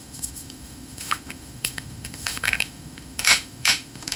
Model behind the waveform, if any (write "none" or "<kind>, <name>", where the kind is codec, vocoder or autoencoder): autoencoder, DAC-VAE